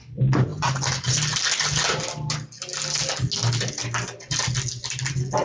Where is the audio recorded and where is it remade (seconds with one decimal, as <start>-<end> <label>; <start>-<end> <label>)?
0.0-5.4 recorded